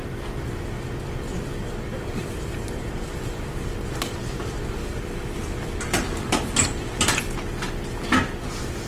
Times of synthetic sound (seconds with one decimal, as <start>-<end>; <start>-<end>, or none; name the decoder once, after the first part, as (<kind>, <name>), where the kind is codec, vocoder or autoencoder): 1.9-7.0 (vocoder, BigVGAN v2)